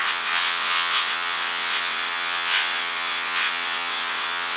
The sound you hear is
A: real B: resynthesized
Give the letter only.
B